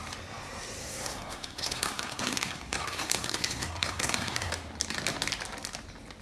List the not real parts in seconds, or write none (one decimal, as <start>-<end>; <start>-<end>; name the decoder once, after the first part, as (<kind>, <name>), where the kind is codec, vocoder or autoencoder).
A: 0.8-4.5 (codec, SNAC)

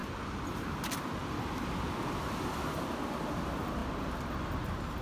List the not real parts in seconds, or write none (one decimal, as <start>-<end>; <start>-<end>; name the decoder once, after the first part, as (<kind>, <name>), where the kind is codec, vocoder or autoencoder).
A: none

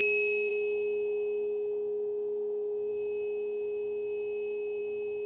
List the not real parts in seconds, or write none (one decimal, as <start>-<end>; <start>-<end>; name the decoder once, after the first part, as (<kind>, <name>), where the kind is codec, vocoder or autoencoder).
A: none